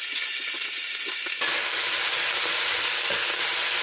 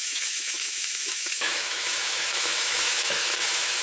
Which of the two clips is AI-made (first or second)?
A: second